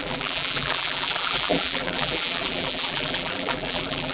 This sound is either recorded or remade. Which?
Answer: remade